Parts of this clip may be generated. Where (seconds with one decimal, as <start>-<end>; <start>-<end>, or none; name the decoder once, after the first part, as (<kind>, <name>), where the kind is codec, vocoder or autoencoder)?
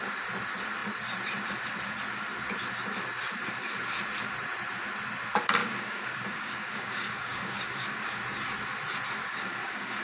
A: 5.6-8.2 (codec, DAC); 9.2-10.0